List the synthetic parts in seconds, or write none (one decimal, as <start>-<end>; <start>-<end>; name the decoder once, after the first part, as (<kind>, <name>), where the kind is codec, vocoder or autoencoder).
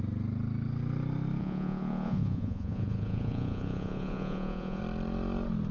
1.4-4.8 (vocoder, Vocos)